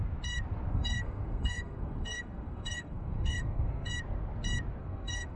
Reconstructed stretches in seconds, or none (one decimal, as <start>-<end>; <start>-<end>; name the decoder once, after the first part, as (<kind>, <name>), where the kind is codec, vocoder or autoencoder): 0.7-3.9 (codec, SNAC); 4.8-5.4